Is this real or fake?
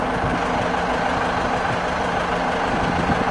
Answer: real